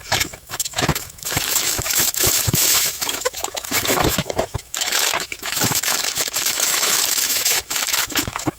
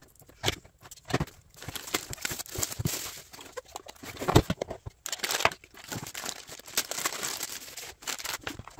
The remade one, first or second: first